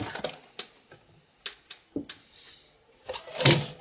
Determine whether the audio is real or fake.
real